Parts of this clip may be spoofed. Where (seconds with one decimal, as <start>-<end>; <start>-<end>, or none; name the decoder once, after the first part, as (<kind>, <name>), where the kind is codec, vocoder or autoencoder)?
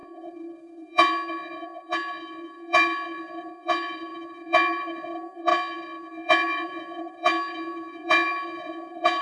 0.0-9.2 (vocoder, Vocos)